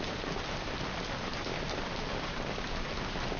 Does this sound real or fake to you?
real